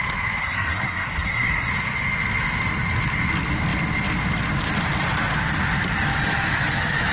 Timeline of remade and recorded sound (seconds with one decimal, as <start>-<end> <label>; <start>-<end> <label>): 0.0-0.4 recorded; 0.4-1.7 remade; 1.7-7.1 recorded